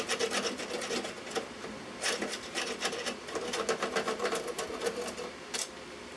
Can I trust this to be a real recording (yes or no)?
yes